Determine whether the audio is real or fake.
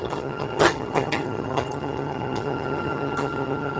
fake